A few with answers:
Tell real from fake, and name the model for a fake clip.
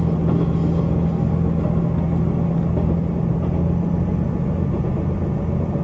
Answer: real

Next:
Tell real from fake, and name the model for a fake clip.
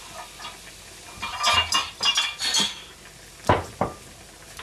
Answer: real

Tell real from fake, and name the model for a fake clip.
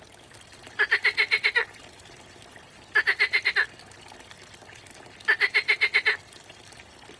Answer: real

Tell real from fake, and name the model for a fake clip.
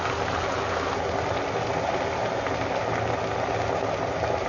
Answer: real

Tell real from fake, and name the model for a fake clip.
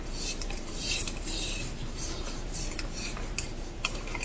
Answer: fake, vocoder, BigVGAN v2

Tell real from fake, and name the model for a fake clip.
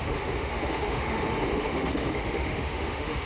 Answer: fake, autoencoder, DAC-VAE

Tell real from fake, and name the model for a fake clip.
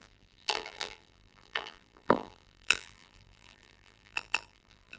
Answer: fake, vocoder, BigVGAN v2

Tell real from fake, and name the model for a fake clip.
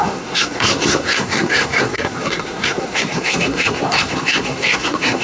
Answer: fake, codec, SNAC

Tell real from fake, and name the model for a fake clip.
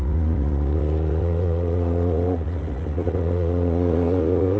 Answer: fake, vocoder, Vocos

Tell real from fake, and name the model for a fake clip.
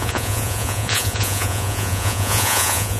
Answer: fake, vocoder, Vocos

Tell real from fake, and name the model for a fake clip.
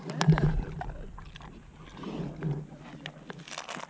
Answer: real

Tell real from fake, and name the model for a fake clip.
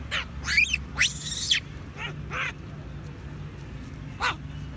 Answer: real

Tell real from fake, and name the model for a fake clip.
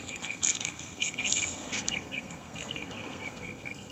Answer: fake, codec, SNAC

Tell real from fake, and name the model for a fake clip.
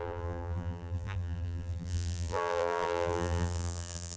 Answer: fake, vocoder, BigVGAN v2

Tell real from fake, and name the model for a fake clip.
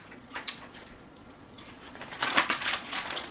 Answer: fake, vocoder, Vocos